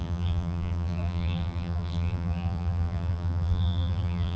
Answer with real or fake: fake